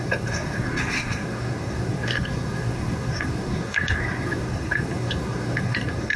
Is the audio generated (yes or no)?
yes